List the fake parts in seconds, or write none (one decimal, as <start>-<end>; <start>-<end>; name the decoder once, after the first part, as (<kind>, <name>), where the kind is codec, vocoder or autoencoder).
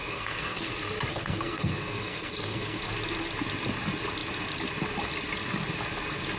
0.0-0.7 (codec, SNAC); 1.1-2.8